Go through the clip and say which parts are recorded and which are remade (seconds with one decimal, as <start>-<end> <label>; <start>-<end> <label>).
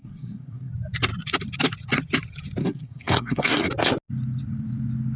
0.0-0.7 remade; 0.7-2.6 recorded; 2.6-3.7 remade; 3.7-5.2 recorded